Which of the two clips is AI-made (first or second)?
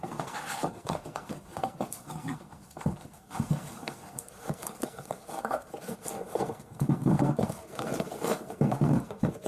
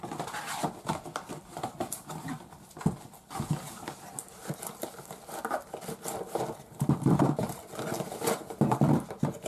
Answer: first